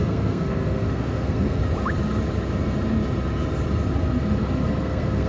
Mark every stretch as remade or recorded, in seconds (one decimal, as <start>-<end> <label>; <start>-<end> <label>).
0.0-1.6 remade; 1.6-4.8 recorded; 4.8-5.3 remade